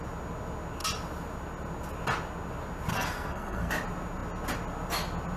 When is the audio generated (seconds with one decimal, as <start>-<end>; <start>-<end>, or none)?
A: 2.9-3.7